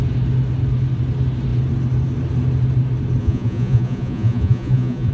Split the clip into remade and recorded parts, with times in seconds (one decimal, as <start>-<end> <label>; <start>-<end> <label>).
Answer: 0.0-3.2 recorded; 3.2-5.1 remade